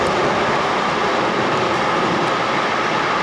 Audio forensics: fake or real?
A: real